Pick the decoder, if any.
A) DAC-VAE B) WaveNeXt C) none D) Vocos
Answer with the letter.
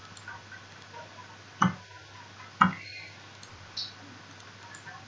C